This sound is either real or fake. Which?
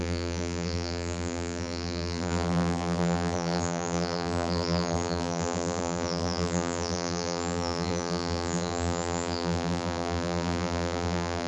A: fake